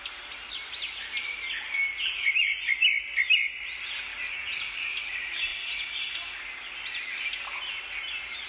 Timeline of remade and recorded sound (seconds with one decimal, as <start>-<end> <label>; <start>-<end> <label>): 0.0-8.5 recorded